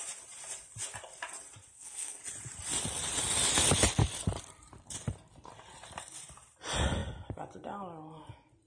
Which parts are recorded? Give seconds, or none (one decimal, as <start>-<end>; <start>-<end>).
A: 0.0-1.7; 2.2-8.7